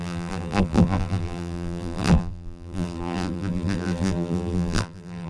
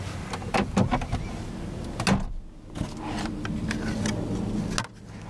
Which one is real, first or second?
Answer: second